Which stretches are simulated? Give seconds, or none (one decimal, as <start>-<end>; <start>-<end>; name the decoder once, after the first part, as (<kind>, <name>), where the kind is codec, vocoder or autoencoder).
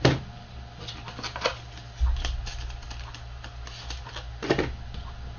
none